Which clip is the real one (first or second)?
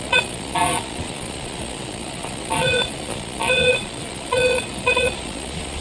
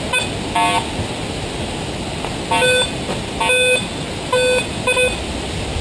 second